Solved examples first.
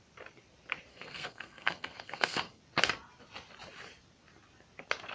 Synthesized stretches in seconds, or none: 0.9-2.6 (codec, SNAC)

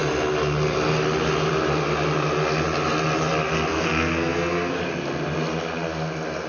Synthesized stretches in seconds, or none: 3.7-4.8 (codec, SNAC)

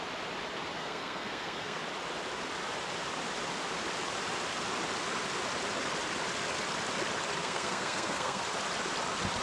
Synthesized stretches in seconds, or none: 0.8-1.8 (codec, SNAC); 7.4-8.4

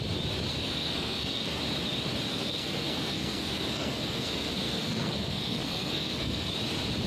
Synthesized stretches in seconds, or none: 0.5-1.6 (codec, SNAC); 2.3-6.5

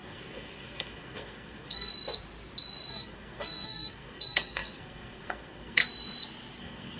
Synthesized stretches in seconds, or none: 0.0-1.9 (codec, SNAC); 2.9-5.8; 6.6-7.0

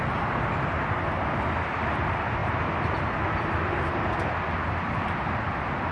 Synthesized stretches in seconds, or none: none

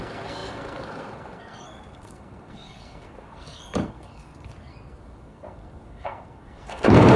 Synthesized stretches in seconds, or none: 0.0-7.2 (codec, SNAC)